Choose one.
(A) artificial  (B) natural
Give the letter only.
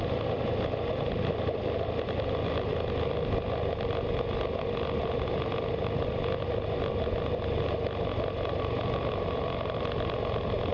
B